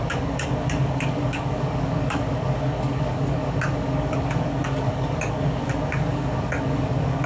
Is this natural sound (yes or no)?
no